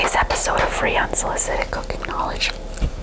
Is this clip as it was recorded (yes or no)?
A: yes